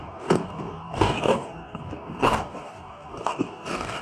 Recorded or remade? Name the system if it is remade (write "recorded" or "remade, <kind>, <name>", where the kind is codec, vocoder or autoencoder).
remade, codec, DAC